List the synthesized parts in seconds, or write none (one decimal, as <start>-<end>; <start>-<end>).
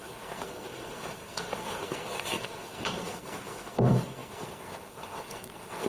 0.0-5.9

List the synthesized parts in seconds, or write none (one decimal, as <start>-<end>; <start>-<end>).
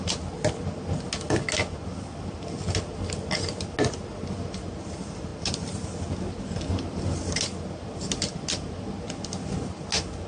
none